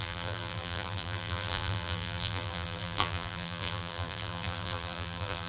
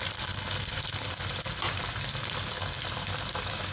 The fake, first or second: first